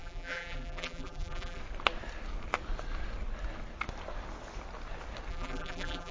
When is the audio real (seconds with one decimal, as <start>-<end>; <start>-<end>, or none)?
1.6-5.3